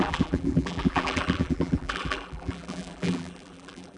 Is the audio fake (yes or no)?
yes